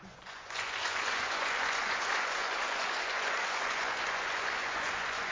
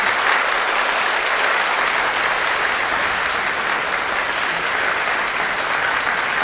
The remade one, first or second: first